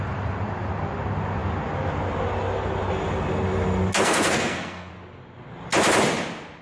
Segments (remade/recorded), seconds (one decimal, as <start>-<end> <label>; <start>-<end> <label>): 0.0-3.9 recorded; 3.9-4.9 remade; 4.9-6.6 recorded

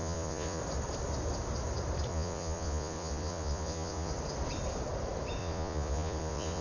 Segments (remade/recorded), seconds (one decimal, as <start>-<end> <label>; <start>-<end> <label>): 0.0-0.6 remade; 0.6-2.1 recorded; 2.1-4.1 remade; 4.1-5.4 recorded; 5.4-6.6 remade

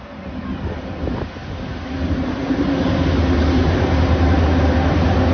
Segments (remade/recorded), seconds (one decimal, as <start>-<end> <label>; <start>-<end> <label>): 0.0-5.3 recorded

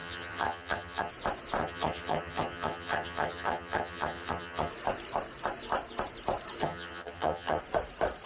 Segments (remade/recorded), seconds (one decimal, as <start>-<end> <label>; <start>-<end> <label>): 0.0-1.1 remade; 1.1-1.6 recorded; 1.6-4.7 remade; 4.7-6.6 recorded; 6.6-7.6 remade; 7.6-8.3 recorded

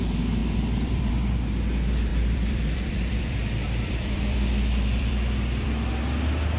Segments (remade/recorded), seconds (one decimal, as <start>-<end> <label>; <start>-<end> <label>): 0.0-0.4 recorded; 0.4-1.1 remade; 1.1-2.1 recorded; 2.1-5.9 remade; 5.9-6.6 recorded

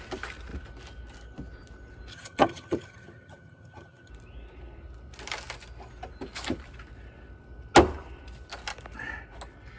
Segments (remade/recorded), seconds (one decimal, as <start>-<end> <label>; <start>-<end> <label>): 0.0-2.1 recorded; 2.1-4.1 remade; 4.1-9.8 recorded

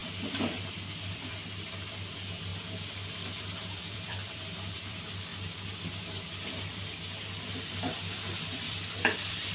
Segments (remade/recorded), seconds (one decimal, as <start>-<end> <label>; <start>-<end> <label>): 0.0-0.7 recorded; 0.7-2.5 remade; 2.5-3.8 recorded; 3.8-5.3 remade; 5.3-8.4 recorded; 8.4-9.5 remade

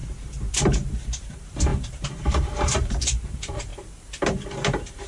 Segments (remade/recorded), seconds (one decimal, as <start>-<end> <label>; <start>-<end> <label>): 0.0-0.5 recorded; 0.5-5.1 remade